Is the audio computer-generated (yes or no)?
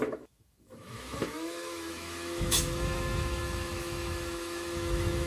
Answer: yes